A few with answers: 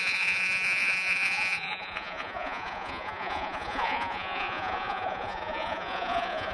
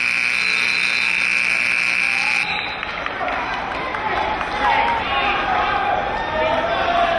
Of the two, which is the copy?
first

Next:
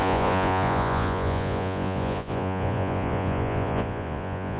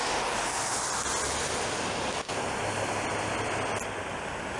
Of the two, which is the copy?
first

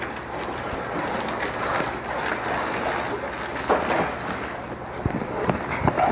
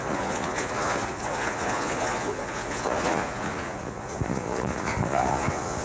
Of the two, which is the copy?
second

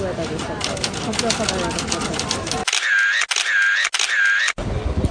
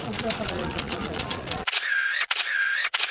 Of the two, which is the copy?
second